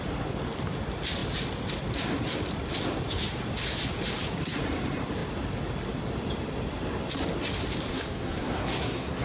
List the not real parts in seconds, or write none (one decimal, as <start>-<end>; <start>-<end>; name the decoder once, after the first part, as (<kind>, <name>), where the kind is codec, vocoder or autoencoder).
7.9-9.2 (codec, SNAC)